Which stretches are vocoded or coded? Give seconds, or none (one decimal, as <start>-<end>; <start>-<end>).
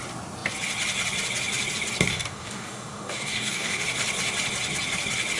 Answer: 2.1-3.8